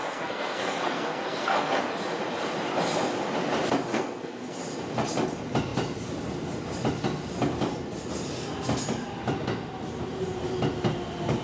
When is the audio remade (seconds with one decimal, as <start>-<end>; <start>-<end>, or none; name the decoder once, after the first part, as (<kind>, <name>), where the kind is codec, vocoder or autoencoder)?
0.0-1.8 (codec, SNAC); 3.9-4.6